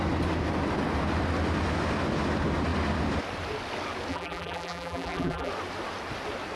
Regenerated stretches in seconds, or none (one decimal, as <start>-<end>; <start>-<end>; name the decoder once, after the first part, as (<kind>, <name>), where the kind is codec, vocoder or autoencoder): 4.1-5.5 (vocoder, BigVGAN v2)